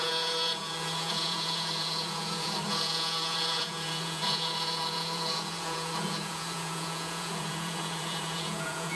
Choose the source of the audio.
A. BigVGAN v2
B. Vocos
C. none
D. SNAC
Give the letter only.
B